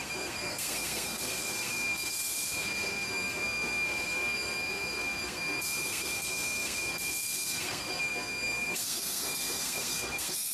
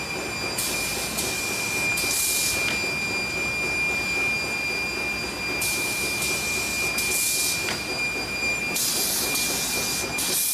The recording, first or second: second